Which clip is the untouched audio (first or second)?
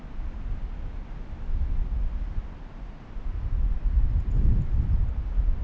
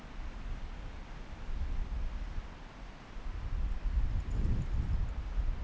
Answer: first